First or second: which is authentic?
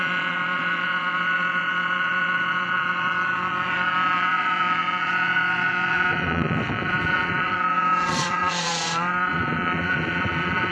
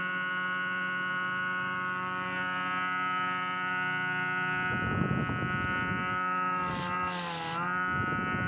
second